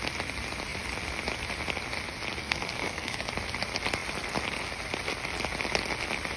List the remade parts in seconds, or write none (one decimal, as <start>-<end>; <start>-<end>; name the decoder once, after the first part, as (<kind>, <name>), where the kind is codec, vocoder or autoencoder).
2.4-3.3 (codec, SNAC)